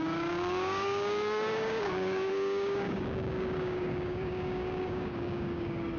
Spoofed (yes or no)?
yes